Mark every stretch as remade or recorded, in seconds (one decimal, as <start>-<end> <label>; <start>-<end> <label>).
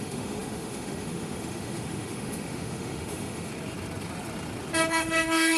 0.0-3.5 remade; 3.5-4.9 recorded; 4.9-5.6 remade